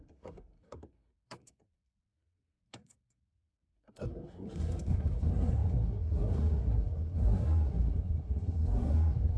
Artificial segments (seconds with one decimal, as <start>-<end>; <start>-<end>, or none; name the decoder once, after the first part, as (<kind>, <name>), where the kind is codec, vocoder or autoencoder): 0.0-9.4 (codec, SNAC)

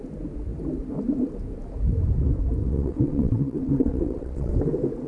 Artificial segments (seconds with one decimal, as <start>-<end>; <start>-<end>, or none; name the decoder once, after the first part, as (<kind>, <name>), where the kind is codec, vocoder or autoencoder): 2.6-4.5 (vocoder, WaveNeXt)

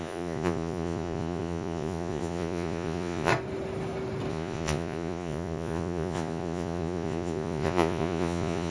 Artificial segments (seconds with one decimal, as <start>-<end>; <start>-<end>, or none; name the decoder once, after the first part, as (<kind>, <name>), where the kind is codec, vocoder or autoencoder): 0.0-3.3 (vocoder, Vocos); 4.3-8.7

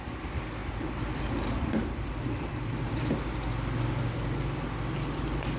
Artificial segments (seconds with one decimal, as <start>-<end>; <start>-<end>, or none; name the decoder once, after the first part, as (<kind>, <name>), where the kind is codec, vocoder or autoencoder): 0.6-3.1 (vocoder, BigVGAN v2)

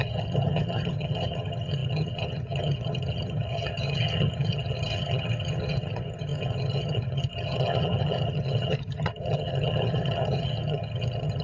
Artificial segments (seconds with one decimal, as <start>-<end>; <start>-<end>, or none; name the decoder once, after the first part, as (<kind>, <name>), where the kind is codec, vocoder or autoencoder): 0.0-11.4 (vocoder, HiFi-GAN)

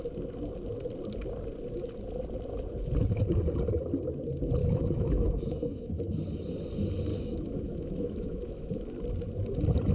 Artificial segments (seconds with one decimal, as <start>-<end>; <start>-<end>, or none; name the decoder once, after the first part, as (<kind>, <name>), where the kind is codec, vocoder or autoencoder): 4.6-6.0 (autoencoder, DAC-VAE); 7.1-8.8

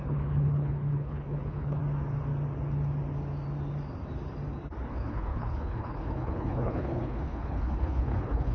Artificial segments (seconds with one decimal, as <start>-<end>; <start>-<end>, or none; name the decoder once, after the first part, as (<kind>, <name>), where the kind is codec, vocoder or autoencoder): 0.0-1.8 (codec, HILCodec); 4.9-8.5

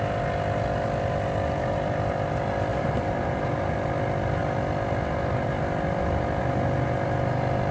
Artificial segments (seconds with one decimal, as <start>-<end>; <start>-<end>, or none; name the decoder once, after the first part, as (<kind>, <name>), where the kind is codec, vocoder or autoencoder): 2.7-3.5 (vocoder, BigVGAN v2)